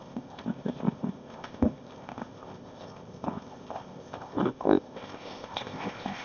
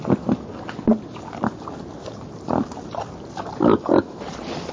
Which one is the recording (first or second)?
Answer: second